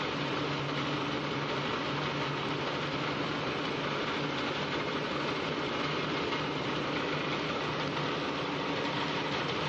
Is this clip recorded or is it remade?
recorded